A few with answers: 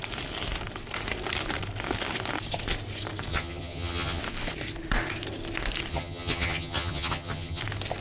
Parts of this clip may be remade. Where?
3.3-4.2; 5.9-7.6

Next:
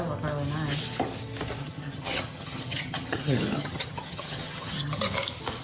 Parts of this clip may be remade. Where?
1.6-5.0

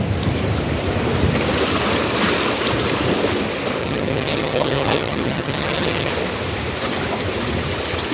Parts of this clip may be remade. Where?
3.8-6.1

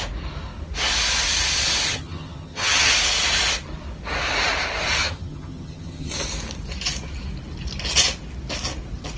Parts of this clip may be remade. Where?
1.9-2.9; 5.0-6.1

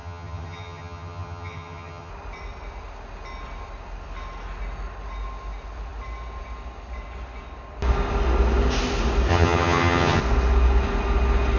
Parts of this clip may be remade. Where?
0.0-2.1; 9.3-10.2

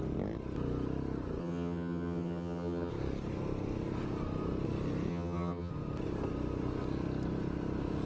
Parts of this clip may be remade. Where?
1.4-2.9; 5.1-5.7

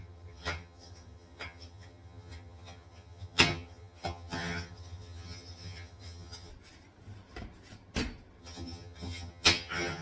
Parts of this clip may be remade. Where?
0.0-6.5; 8.4-10.0